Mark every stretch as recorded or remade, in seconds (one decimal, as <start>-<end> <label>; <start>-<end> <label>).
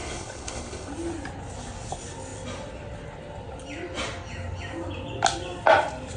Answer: 0.0-0.9 remade; 0.9-6.2 recorded